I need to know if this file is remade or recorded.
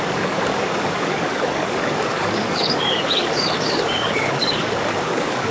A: remade